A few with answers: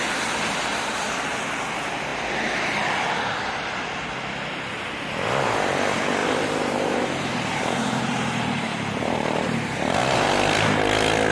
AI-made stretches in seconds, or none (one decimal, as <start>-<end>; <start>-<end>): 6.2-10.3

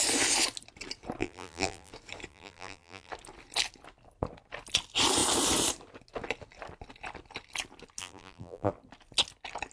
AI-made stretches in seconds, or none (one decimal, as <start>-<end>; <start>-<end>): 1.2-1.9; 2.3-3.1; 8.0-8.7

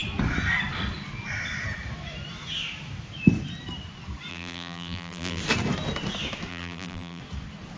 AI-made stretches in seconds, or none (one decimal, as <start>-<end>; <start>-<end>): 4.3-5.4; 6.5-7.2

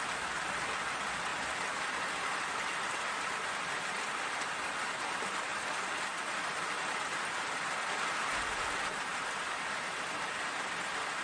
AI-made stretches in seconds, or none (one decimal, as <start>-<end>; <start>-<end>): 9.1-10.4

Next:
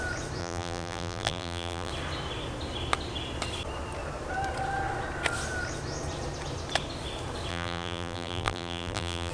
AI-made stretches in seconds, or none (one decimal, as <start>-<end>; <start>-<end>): 0.4-1.9; 7.5-9.3

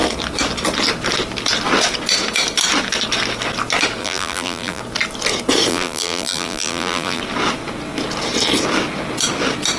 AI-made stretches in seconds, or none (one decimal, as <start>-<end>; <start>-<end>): 4.0-4.8; 5.7-7.2

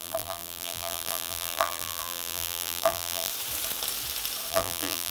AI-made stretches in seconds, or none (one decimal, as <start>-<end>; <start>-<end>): 0.0-3.3; 4.5-5.1

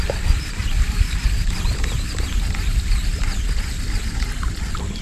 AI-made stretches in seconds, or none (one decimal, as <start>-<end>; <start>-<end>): 0.6-1.9